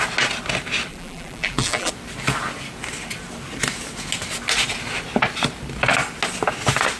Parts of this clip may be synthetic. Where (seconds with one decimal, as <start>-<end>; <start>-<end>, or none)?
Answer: 0.9-1.9

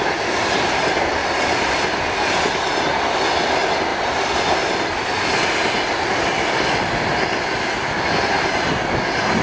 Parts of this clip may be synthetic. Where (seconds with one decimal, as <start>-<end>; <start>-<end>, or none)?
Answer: 1.2-2.0; 3.9-7.5